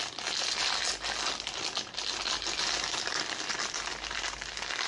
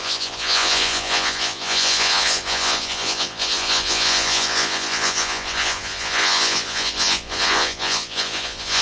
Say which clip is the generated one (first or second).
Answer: second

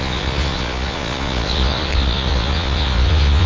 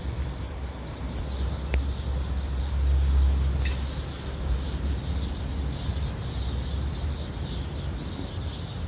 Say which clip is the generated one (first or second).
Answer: first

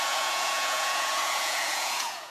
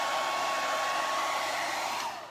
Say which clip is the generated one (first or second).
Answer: first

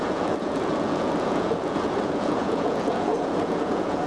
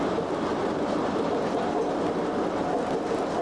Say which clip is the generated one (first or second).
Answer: first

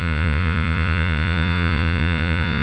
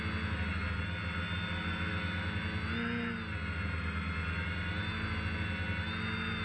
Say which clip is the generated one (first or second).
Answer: first